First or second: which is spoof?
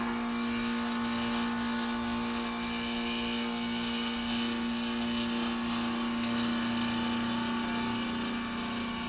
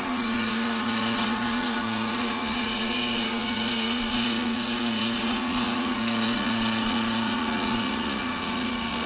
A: second